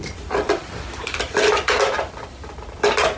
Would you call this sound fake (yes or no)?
yes